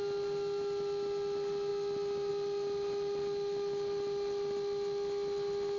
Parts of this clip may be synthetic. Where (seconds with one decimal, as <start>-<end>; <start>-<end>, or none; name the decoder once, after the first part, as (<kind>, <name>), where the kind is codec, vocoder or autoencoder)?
none

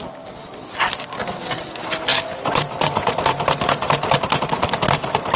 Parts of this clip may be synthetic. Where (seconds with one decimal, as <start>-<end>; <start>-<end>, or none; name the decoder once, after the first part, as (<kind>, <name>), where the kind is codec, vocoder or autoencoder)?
none

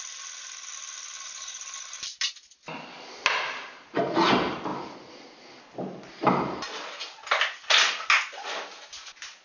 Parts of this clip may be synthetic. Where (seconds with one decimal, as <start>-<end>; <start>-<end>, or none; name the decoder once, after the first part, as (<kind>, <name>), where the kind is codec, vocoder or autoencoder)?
none

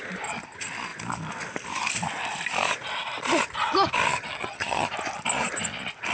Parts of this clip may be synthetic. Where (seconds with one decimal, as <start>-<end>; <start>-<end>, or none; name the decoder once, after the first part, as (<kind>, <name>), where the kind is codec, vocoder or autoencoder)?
4.1-4.9 (vocoder, HiFi-GAN)